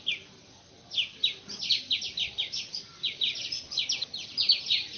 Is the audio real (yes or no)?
yes